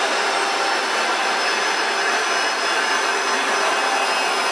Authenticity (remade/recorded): recorded